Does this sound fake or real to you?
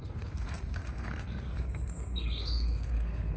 fake